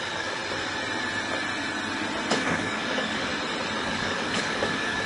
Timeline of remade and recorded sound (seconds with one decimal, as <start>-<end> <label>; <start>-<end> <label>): 0.0-0.4 remade; 0.4-2.3 recorded; 2.3-3.3 remade; 3.3-3.8 recorded; 3.8-5.1 remade